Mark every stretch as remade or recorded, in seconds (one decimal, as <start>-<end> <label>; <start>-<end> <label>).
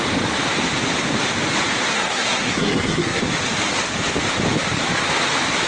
0.0-1.9 recorded; 1.9-3.2 remade; 3.2-5.7 recorded